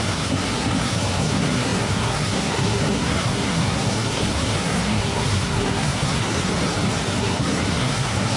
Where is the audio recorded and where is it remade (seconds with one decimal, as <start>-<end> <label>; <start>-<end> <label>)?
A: 0.0-6.5 remade; 6.5-7.2 recorded; 7.2-8.4 remade